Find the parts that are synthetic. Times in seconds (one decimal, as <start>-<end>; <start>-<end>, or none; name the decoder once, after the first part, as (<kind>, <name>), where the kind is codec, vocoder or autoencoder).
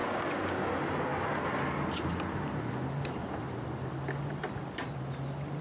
0.0-0.7 (codec, DAC)